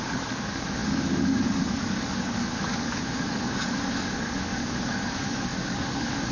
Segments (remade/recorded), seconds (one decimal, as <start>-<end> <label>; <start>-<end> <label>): 0.0-6.3 remade